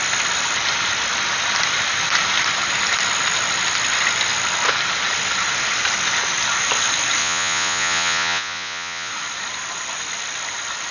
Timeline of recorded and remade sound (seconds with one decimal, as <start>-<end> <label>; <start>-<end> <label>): 0.0-7.2 recorded; 7.2-9.1 remade; 9.1-10.9 recorded